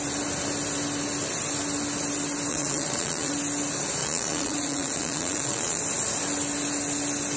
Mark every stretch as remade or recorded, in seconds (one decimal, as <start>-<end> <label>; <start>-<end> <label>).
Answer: 0.0-2.5 recorded; 2.5-3.3 remade; 3.3-4.0 recorded; 4.0-5.8 remade; 5.8-7.4 recorded